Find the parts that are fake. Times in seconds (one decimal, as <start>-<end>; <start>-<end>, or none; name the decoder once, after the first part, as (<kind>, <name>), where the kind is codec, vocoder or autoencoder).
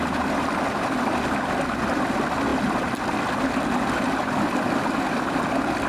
none